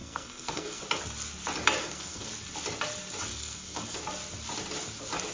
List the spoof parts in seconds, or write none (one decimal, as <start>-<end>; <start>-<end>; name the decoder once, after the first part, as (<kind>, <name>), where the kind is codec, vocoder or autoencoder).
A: 0.0-0.8 (codec, SNAC); 1.8-2.3; 3.3-4.0